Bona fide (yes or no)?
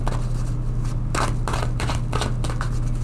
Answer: yes